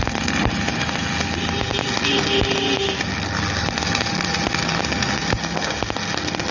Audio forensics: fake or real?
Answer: real